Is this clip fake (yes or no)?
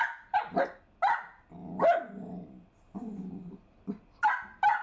no